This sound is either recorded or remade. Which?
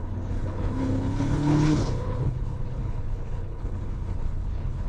remade